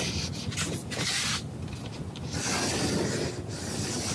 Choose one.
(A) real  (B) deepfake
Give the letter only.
A